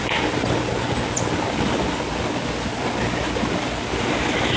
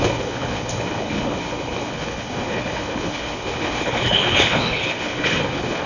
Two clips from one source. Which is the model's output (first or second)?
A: second